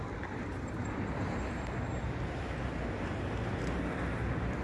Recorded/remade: recorded